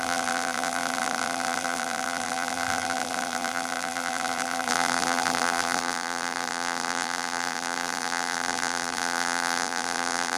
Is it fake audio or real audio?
fake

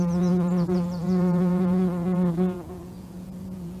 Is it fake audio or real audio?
fake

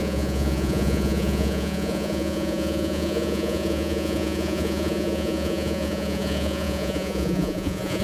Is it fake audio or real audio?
fake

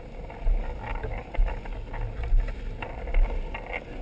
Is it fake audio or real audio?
real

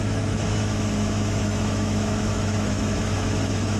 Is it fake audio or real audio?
fake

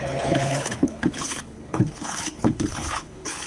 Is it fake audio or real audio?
fake